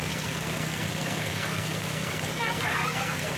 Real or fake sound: fake